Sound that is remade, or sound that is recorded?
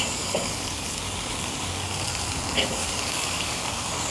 remade